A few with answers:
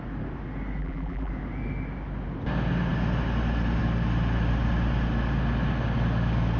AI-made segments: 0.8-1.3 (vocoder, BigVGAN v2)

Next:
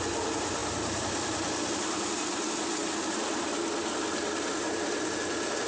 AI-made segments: 0.6-1.8 (vocoder, BigVGAN v2)

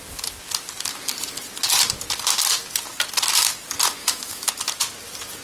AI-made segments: 4.0-4.5 (autoencoder, DAC-VAE)

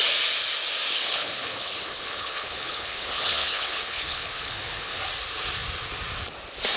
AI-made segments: 0.9-5.0 (codec, HILCodec)